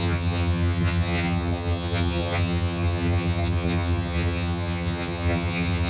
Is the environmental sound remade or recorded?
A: remade